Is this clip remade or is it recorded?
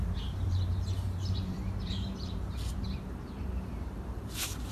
remade